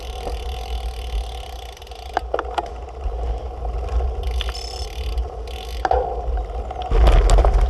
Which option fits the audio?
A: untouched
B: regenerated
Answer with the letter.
A